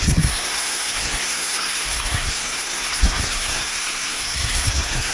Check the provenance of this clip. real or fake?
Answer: fake